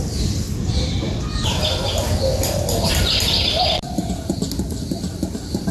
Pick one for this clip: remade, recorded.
recorded